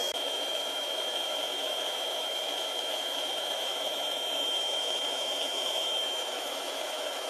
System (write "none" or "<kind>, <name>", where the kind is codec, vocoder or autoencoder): autoencoder, DAC-VAE